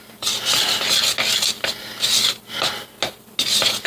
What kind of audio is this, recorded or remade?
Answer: recorded